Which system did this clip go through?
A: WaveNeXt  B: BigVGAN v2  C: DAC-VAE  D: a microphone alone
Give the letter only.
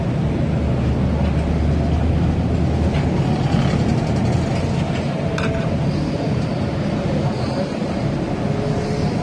D